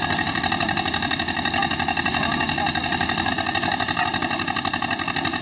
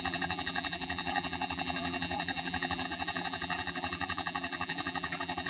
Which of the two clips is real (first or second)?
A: first